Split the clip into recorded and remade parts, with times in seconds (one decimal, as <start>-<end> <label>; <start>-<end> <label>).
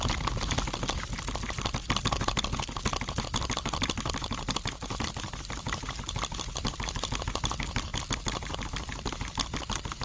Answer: 0.0-10.0 recorded